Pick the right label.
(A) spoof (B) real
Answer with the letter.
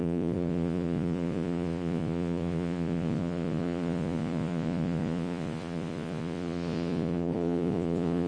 A